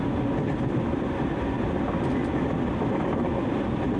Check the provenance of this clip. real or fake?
real